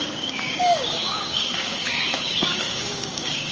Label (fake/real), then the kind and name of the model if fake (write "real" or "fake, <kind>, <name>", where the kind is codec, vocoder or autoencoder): fake, codec, DAC